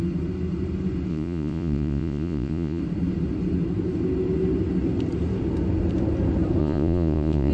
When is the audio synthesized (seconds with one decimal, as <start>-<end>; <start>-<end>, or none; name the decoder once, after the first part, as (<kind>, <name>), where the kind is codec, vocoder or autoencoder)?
1.1-2.8 (vocoder, Vocos); 6.6-7.5